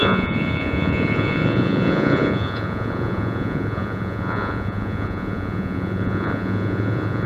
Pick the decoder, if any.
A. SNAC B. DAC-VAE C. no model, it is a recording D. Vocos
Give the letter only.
D